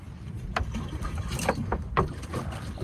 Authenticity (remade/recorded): recorded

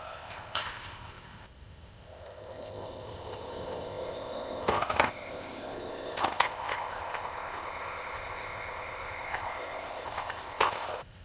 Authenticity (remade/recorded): remade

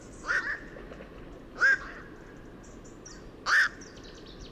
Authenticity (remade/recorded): recorded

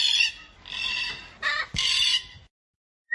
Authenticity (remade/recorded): recorded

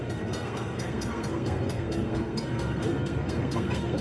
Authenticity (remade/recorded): remade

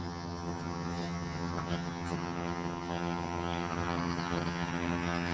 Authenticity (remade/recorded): remade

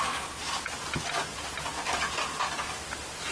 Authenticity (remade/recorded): recorded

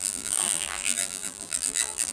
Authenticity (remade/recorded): remade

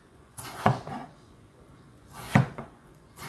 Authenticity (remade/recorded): remade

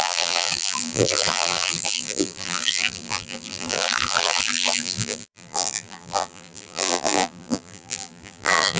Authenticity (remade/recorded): remade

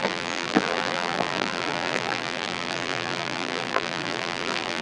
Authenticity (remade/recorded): remade